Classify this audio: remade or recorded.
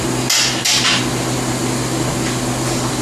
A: recorded